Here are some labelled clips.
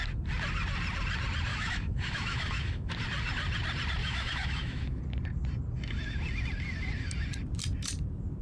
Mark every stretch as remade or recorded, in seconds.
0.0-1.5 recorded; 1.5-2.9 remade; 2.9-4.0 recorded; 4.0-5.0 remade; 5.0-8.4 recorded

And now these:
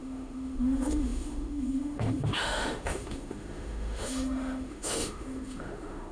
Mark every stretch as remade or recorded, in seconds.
0.0-6.1 remade

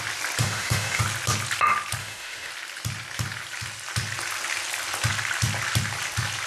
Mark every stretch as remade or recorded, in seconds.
0.0-0.4 recorded; 0.4-1.0 remade; 1.0-2.0 recorded; 2.0-2.5 remade; 2.5-6.5 recorded

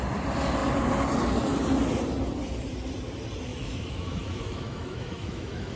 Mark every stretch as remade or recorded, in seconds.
0.0-3.5 recorded; 3.5-5.8 remade

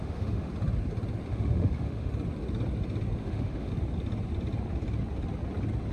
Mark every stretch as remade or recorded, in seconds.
0.0-0.5 remade; 0.5-1.3 recorded; 1.3-2.1 remade; 2.1-3.2 recorded; 3.2-3.7 remade; 3.7-5.9 recorded

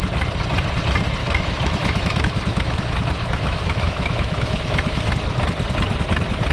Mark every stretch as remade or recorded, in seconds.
0.0-1.2 recorded; 1.2-5.1 remade; 5.1-6.5 recorded

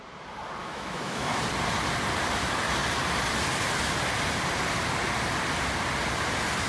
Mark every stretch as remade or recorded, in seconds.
0.0-0.6 recorded; 0.6-1.4 remade; 1.4-6.7 recorded

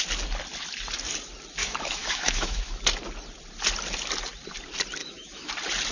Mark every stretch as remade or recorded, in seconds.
0.0-1.6 recorded; 1.6-2.8 remade; 2.8-5.0 recorded; 5.0-5.5 remade; 5.5-5.9 recorded